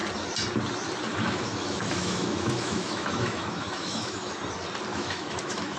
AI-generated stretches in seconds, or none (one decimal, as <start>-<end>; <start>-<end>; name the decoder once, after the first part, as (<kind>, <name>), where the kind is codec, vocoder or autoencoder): 1.1-4.4 (autoencoder, DAC-VAE); 4.9-5.8